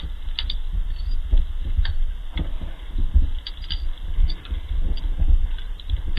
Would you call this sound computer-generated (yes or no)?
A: no